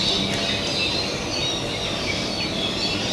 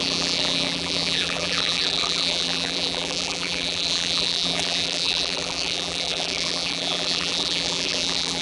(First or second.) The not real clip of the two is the second